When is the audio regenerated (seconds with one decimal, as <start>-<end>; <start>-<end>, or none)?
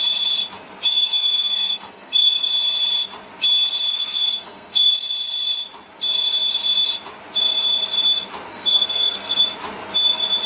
0.9-2.5; 3.9-4.9; 8.5-9.4